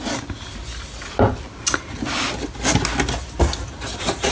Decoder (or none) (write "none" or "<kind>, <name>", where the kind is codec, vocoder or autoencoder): none